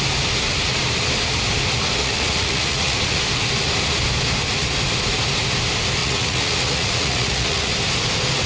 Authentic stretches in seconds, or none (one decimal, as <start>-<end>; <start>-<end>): 0.0-2.0; 3.2-6.0; 7.7-8.5